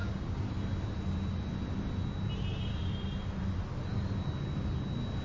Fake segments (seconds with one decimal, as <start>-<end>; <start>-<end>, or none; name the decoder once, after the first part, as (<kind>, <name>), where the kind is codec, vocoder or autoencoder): 0.0-0.5 (codec, DAC)